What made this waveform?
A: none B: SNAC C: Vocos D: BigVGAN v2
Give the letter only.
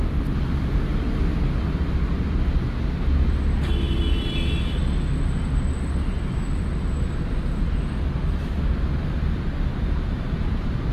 A